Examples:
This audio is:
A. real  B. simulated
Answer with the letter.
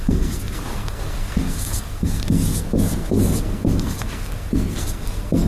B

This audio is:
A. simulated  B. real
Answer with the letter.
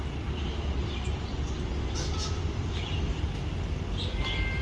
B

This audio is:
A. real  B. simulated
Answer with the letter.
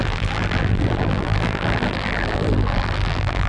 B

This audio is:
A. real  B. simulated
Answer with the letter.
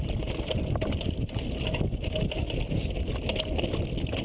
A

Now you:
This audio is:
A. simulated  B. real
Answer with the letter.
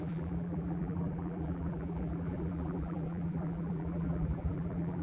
A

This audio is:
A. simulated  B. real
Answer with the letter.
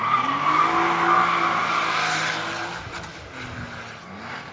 B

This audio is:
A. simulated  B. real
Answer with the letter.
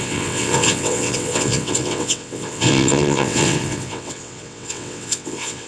A